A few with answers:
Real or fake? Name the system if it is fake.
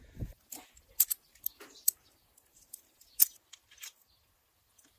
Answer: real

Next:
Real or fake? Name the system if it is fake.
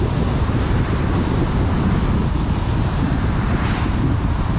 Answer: fake, vocoder, BigVGAN v2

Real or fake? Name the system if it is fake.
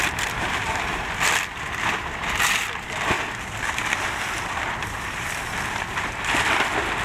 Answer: fake, vocoder, BigVGAN v2